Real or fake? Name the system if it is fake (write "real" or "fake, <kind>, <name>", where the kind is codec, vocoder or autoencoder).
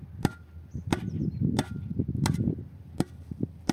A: real